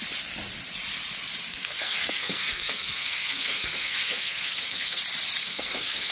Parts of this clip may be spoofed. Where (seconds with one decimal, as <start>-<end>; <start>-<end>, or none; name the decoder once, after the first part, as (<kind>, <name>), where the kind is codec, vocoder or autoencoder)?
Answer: 1.5-5.0 (codec, SNAC); 5.4-6.1